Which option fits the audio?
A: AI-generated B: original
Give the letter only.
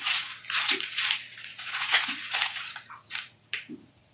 A